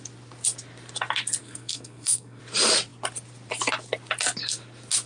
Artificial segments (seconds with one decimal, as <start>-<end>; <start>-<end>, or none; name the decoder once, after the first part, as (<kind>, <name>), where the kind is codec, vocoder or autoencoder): 1.4-2.4 (codec, SNAC)